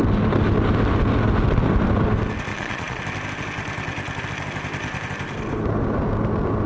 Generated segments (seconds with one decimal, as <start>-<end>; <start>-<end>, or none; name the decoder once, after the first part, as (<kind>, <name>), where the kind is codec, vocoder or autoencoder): 2.5-3.0 (vocoder, Vocos)